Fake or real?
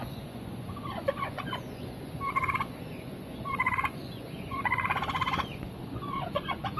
fake